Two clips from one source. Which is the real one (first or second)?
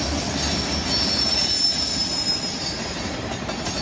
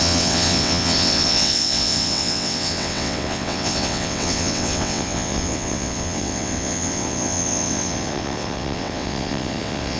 first